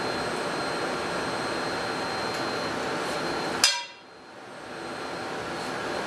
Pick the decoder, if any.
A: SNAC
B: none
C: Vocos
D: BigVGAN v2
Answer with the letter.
B